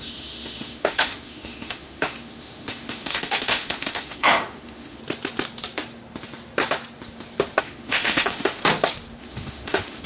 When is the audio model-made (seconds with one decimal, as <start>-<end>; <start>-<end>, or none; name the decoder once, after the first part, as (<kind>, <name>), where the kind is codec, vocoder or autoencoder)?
0.0-5.0 (autoencoder, DAC-VAE); 7.6-8.6; 9.2-10.1

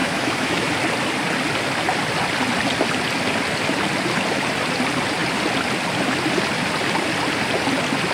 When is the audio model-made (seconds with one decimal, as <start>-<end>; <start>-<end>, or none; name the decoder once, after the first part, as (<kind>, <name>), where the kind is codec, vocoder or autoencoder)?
0.0-0.7 (autoencoder, DAC-VAE)